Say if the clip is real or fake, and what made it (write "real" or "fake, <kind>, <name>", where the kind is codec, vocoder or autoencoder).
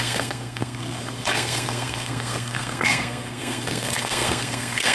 fake, codec, SNAC